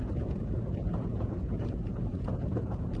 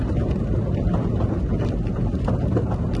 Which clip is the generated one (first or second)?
first